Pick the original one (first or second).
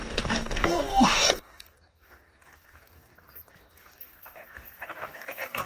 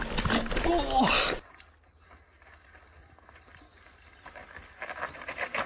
second